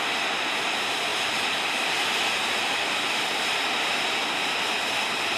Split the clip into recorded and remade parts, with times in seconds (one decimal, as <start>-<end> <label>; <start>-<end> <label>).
0.0-1.1 recorded; 1.1-4.3 remade; 4.3-5.4 recorded